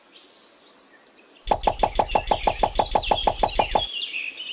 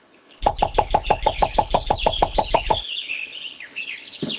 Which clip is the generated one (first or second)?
second